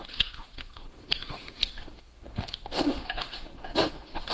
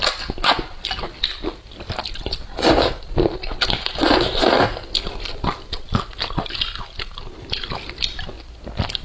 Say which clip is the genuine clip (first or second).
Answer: second